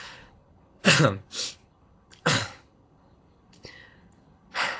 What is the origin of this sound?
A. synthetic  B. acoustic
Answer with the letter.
A